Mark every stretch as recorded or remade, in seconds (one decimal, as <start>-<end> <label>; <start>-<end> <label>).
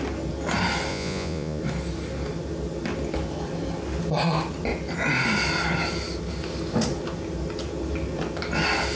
0.0-0.9 recorded; 0.9-1.6 remade; 1.6-9.0 recorded